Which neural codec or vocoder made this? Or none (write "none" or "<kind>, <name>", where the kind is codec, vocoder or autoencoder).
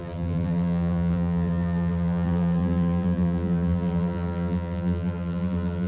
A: vocoder, BigVGAN v2